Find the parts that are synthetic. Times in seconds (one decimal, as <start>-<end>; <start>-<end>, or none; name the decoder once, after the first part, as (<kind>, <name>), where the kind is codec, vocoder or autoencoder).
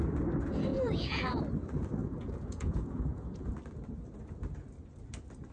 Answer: 0.7-1.4 (vocoder, Vocos); 2.0-3.5